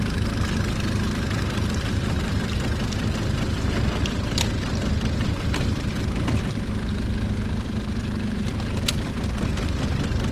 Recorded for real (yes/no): yes